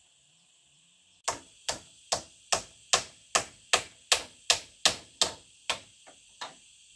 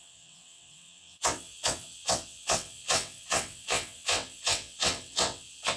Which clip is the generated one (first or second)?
second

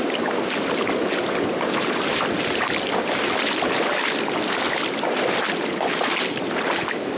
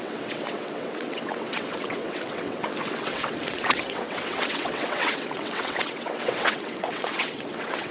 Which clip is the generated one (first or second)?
second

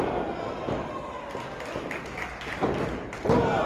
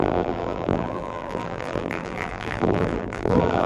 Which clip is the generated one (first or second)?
second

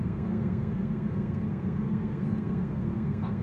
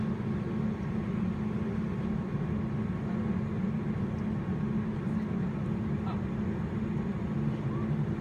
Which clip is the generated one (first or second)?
first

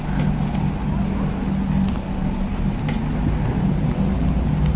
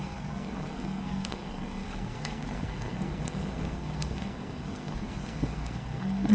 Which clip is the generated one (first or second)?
second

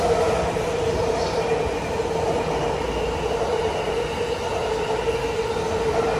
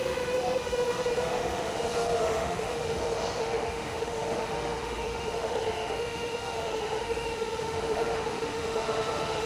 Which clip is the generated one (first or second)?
second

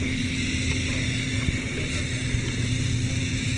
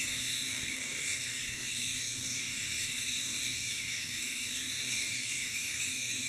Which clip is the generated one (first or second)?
second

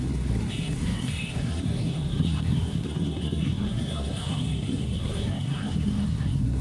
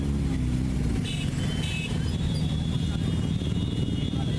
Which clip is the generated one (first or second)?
first